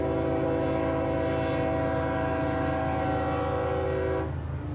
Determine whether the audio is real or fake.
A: real